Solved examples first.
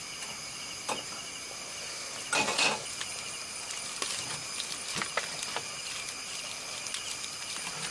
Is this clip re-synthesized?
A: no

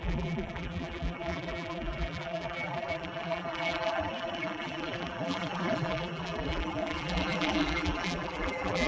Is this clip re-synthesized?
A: yes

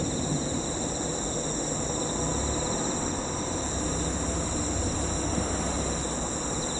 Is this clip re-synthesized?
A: no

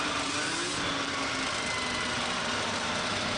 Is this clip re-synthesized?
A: no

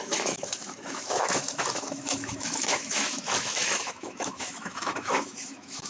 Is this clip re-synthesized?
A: yes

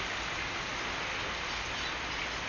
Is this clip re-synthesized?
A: no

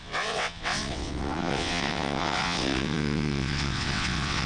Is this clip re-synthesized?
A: yes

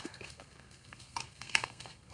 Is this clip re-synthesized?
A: yes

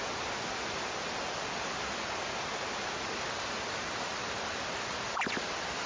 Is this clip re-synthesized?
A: no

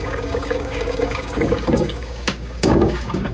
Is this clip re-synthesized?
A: yes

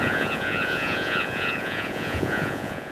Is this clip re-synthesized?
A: yes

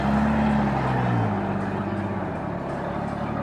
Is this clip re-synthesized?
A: no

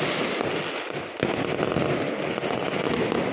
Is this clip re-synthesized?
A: no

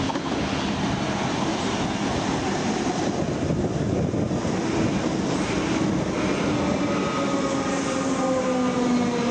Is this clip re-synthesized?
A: no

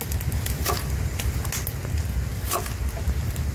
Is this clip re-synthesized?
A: no